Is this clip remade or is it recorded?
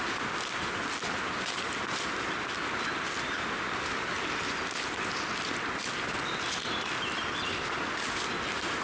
recorded